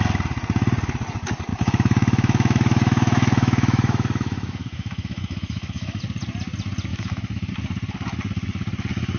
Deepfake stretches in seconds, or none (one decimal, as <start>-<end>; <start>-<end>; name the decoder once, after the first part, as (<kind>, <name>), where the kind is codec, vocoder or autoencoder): 1.5-6.0 (autoencoder, DAC-VAE); 6.9-7.5